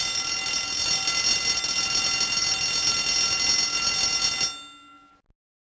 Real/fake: real